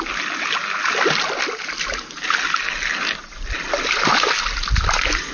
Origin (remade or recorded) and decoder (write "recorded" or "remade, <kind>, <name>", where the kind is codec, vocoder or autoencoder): recorded